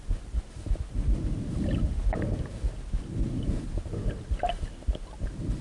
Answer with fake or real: real